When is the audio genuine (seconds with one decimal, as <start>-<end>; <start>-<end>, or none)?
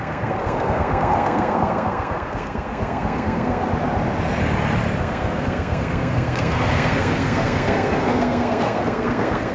3.6-5.0